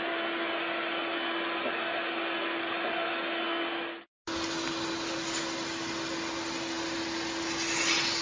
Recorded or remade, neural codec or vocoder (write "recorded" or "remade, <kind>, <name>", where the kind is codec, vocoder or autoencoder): recorded